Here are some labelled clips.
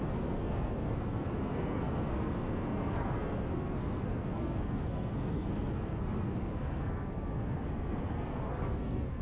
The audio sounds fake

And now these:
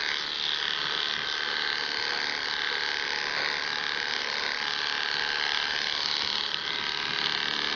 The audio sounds real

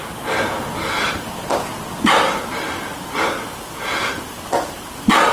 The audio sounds real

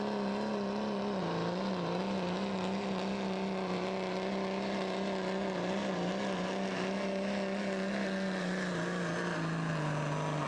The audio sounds real